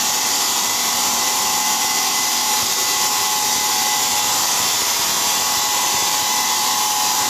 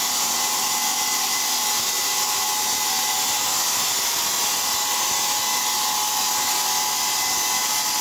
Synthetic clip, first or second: first